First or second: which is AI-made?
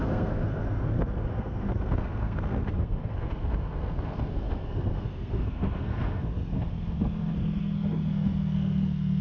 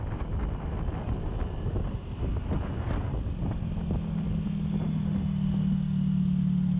first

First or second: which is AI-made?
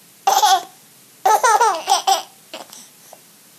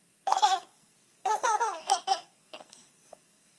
second